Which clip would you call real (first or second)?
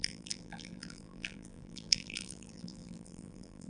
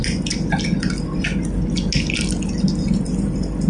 second